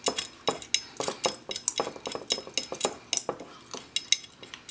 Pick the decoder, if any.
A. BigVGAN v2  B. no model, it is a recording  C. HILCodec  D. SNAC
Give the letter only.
B